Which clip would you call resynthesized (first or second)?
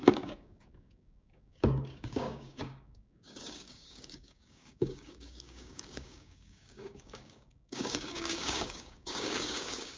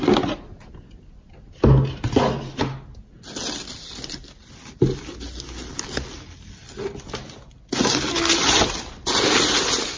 first